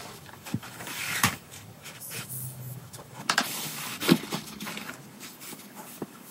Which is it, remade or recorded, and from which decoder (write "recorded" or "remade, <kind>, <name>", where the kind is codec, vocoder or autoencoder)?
remade, codec, DAC